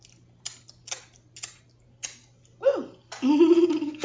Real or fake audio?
real